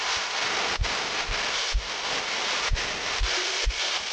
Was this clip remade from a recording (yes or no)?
no